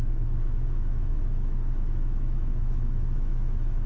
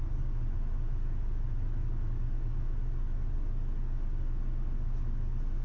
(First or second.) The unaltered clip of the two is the second